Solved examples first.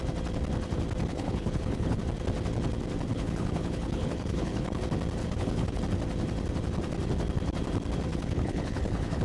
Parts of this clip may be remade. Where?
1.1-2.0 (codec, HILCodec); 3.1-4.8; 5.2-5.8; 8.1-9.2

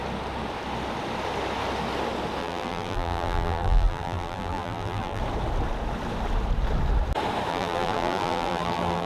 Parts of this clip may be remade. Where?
2.4-5.2 (vocoder, BigVGAN v2); 7.5-9.1

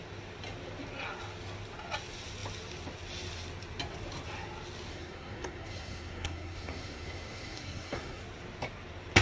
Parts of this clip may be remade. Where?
4.9-8.2 (codec, SNAC)

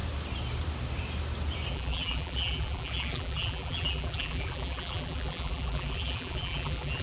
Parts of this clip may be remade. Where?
1.7-7.0 (vocoder, BigVGAN v2)

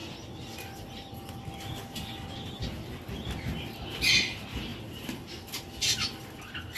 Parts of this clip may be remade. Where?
none

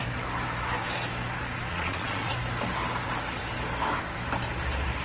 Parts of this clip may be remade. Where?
1.7-2.3 (vocoder, Vocos)